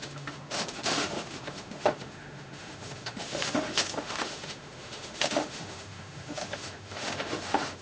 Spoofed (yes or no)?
yes